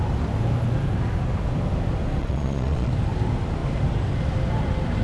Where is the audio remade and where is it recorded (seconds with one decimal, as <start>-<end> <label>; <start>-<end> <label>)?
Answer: 0.0-2.2 recorded; 2.2-2.9 remade; 2.9-5.0 recorded